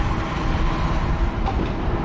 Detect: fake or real real